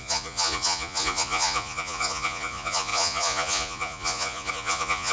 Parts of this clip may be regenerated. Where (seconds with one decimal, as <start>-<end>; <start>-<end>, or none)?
0.0-5.1